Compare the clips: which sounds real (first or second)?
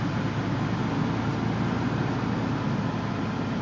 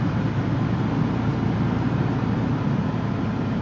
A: first